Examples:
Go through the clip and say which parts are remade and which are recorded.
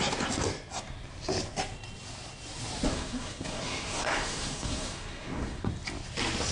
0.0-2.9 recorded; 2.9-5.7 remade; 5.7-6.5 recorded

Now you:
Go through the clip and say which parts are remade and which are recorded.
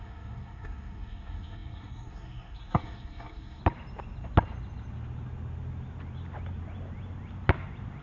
0.0-3.6 remade; 3.6-8.0 recorded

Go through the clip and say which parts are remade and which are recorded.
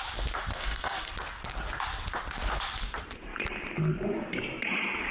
0.0-0.5 recorded; 0.5-1.1 remade; 1.1-5.1 recorded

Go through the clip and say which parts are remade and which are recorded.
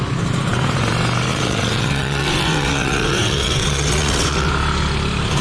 0.0-1.3 recorded; 1.3-4.5 remade; 4.5-5.4 recorded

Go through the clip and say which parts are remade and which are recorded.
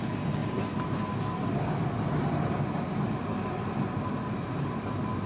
0.0-5.3 recorded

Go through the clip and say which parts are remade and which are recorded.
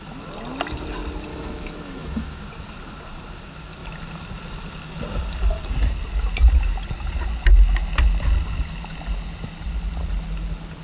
0.0-1.3 recorded; 1.3-2.4 remade; 2.4-10.8 recorded